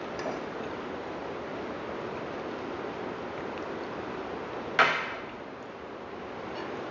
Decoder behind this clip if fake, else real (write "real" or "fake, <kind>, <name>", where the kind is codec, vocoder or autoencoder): real